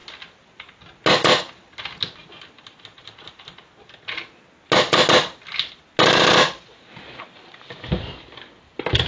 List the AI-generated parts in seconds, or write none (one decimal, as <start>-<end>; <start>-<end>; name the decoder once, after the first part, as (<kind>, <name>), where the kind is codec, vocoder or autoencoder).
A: none